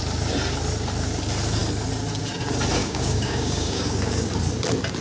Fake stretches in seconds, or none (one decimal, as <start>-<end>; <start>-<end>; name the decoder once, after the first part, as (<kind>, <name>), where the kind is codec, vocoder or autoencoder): 2.8-4.3 (codec, DAC)